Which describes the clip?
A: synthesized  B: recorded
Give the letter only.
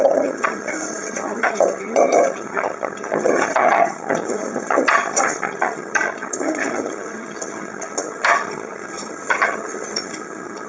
A